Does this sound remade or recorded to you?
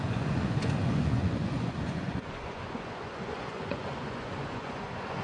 remade